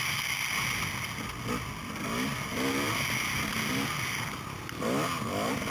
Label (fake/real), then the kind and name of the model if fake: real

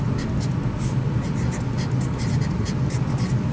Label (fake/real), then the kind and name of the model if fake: real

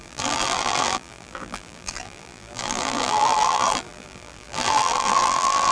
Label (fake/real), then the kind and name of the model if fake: fake, vocoder, BigVGAN v2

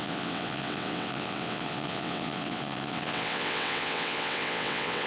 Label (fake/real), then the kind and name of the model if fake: fake, vocoder, WaveNeXt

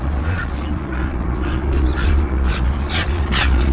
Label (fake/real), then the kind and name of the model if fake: fake, vocoder, Vocos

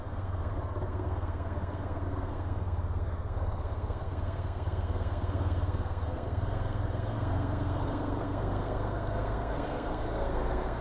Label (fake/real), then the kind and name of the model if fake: fake, codec, SNAC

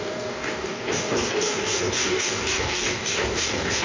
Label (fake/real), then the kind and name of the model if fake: fake, codec, DAC